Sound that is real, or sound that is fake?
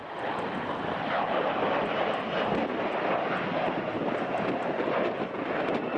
real